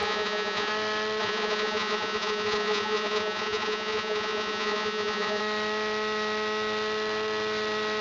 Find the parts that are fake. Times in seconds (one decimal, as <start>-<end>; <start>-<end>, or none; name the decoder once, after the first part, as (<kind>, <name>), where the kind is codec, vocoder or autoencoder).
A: 0.0-0.7 (vocoder, Vocos); 1.2-5.4